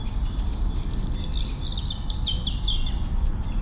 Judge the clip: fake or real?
real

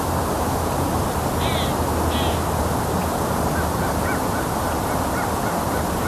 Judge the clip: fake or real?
real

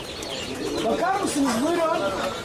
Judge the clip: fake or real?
real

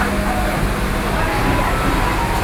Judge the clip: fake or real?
real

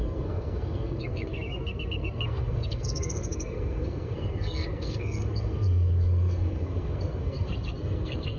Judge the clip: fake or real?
fake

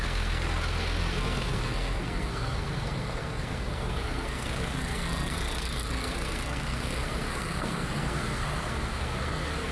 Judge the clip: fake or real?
fake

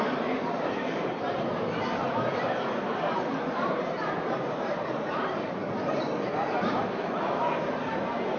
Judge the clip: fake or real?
fake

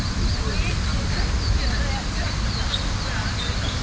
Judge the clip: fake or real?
real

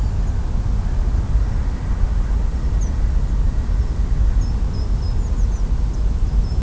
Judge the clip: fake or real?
real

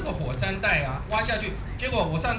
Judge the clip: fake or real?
real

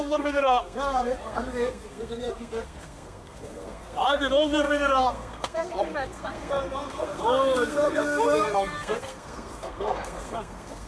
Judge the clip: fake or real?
fake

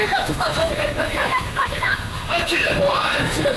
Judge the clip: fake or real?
fake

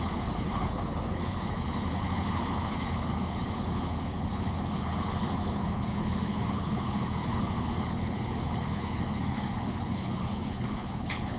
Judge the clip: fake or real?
fake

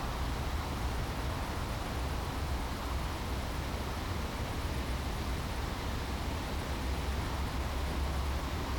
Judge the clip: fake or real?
real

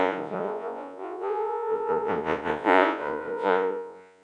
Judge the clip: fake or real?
fake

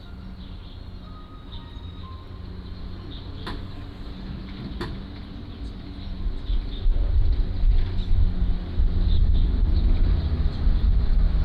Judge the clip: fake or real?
real